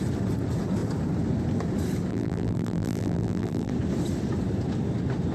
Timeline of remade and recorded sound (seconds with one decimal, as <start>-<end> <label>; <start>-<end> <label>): 0.0-2.1 recorded; 2.1-3.7 remade; 3.7-5.3 recorded